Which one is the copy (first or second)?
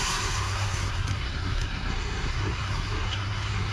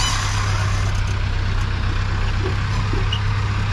first